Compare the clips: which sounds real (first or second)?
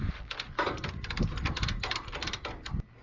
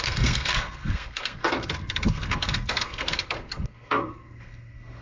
first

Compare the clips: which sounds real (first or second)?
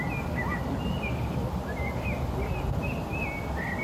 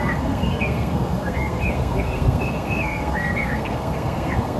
first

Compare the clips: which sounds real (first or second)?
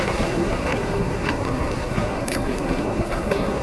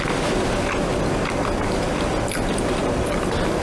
second